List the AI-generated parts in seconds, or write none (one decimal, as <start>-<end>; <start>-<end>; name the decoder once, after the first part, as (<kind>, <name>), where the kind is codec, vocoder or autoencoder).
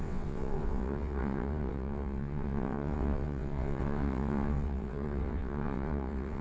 0.0-6.4 (vocoder, WaveNeXt)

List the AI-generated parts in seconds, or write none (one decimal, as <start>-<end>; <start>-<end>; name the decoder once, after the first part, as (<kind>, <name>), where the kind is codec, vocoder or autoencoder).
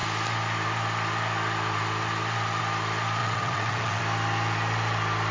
3.2-4.0 (vocoder, WaveNeXt)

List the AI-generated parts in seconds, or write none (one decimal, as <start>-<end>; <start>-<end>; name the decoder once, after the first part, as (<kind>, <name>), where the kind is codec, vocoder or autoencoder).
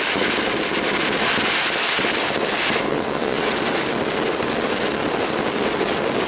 2.9-3.5 (vocoder, WaveNeXt)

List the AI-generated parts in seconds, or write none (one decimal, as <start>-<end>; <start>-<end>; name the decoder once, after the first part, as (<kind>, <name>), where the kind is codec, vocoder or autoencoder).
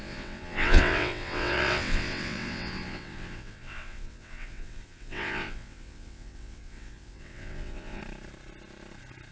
0.0-8.0 (vocoder, WaveNeXt)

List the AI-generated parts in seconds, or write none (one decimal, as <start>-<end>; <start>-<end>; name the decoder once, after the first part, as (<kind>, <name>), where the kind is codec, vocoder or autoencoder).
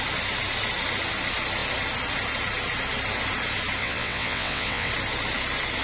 3.8-4.9 (vocoder, WaveNeXt)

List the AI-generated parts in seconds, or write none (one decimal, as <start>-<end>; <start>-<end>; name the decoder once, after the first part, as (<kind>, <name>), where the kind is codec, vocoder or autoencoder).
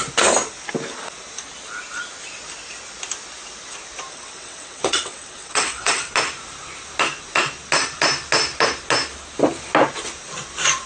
4.1-6.1 (vocoder, WaveNeXt)